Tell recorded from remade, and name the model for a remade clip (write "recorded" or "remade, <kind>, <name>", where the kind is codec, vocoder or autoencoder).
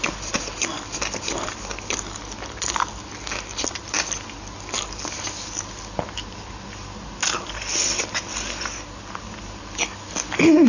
recorded